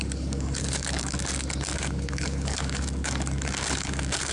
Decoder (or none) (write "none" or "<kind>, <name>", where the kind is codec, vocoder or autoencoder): codec, DAC